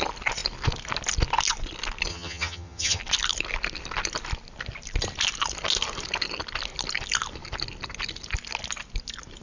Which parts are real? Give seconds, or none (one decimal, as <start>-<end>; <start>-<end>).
0.0-2.1; 3.0-9.4